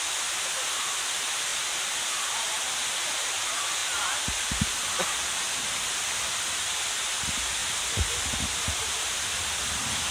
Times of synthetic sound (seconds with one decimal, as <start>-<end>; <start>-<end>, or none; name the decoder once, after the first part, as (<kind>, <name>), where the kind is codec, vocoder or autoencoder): 3.8-6.3 (vocoder, BigVGAN v2)